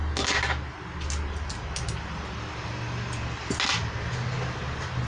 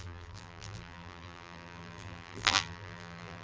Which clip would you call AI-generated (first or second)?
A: second